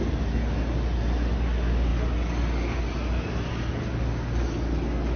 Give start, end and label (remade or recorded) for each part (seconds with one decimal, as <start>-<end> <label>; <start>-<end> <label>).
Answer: 0.0-5.2 recorded